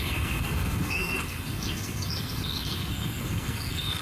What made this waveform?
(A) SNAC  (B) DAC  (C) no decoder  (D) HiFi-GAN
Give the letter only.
A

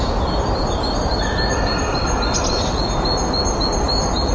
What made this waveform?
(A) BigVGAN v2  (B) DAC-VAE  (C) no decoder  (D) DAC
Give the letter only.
C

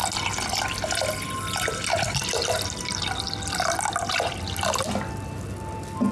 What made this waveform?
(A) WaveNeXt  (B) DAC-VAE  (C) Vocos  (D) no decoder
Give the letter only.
D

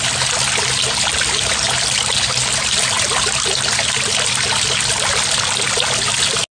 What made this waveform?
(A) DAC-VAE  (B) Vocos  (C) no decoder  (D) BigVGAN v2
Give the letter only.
C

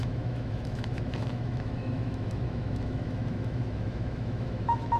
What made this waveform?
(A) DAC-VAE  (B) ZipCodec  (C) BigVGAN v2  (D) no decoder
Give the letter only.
A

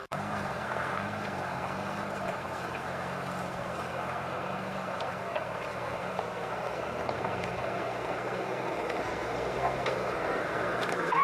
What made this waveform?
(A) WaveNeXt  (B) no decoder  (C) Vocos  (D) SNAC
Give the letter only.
D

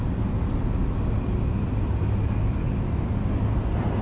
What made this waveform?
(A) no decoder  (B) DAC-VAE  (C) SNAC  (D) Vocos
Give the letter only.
A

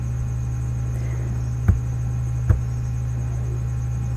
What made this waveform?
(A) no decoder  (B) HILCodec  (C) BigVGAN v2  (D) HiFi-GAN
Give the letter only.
A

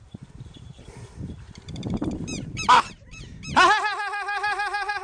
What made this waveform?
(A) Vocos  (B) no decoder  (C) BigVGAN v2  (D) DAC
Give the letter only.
C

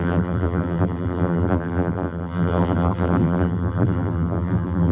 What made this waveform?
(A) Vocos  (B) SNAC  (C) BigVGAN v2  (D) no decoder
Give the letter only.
C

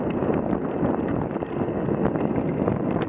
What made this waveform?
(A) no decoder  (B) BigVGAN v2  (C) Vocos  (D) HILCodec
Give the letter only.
A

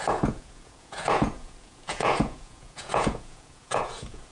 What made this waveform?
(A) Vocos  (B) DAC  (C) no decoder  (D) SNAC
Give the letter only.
A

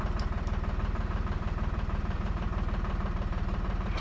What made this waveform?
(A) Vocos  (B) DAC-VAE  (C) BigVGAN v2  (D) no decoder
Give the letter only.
C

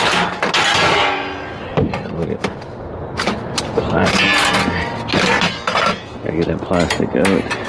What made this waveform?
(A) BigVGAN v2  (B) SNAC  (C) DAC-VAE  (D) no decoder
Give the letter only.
D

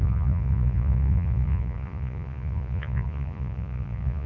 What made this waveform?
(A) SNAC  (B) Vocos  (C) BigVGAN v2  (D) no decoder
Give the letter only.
B